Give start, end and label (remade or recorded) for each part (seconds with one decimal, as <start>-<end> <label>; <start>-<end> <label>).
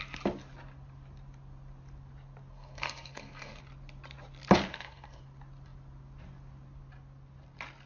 0.0-2.5 recorded; 2.5-3.6 remade; 3.6-4.7 recorded; 4.7-5.2 remade; 5.2-7.9 recorded